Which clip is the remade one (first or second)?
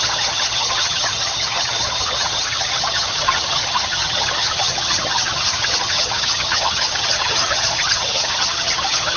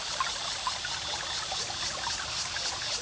first